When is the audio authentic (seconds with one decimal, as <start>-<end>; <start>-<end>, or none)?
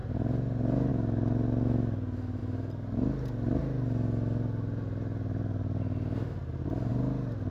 0.0-7.5